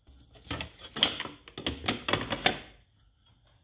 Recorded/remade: recorded